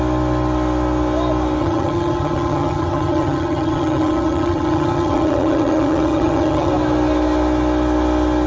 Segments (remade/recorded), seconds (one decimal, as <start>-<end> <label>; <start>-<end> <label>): 0.0-1.6 recorded; 1.6-6.7 remade; 6.7-8.5 recorded